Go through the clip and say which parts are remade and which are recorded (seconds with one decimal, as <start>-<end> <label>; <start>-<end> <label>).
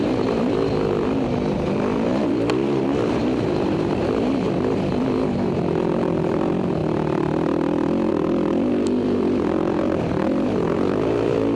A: 0.0-6.8 remade; 6.8-8.1 recorded; 8.1-11.6 remade